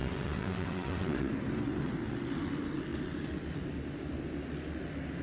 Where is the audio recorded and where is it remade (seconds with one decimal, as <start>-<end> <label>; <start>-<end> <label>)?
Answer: 0.0-1.3 remade; 1.3-5.2 recorded